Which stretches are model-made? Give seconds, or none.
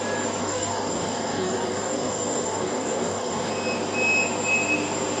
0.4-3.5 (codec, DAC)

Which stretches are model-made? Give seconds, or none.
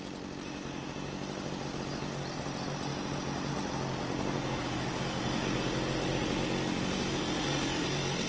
none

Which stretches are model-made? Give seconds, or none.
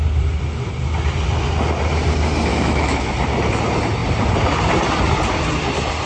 2.5-3.1 (autoencoder, DAC-VAE)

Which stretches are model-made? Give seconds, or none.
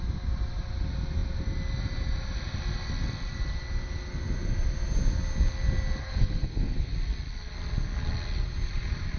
6.0-6.9 (codec, SNAC)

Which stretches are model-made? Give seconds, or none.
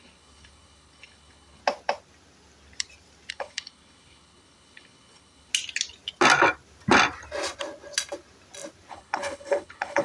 0.0-1.6 (codec, HILCodec); 3.3-5.5; 8.9-10.0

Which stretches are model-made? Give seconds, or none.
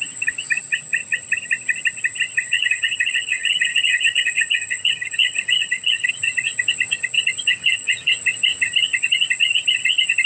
2.5-6.1 (vocoder, HiFi-GAN); 7.5-8.1